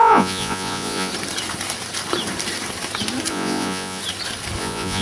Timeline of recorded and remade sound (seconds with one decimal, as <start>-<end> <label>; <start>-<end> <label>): 0.0-1.1 remade; 1.1-3.3 recorded; 3.3-4.0 remade; 4.0-4.6 recorded; 4.6-5.0 remade